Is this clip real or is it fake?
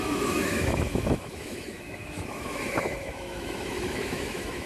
fake